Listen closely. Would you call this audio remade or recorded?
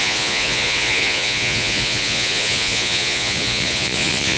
remade